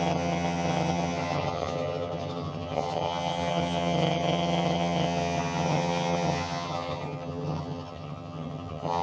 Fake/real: fake